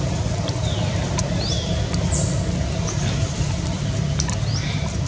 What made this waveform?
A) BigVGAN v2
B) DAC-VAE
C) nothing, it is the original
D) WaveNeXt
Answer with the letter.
A